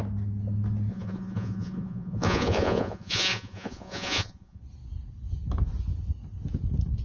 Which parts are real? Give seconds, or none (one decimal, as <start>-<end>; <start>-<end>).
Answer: 0.0-0.9; 4.6-7.0